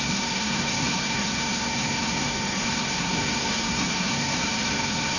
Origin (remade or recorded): remade